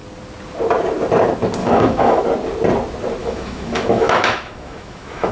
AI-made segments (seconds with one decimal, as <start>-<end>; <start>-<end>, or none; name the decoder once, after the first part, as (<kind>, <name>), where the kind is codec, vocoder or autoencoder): 1.6-2.2 (autoencoder, DAC-VAE); 3.2-5.3